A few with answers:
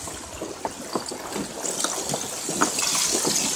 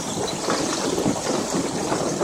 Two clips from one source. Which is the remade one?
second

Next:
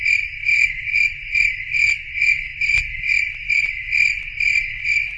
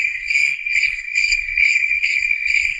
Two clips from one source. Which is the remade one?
second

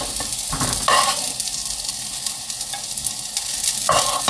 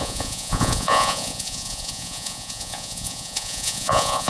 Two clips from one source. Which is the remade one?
second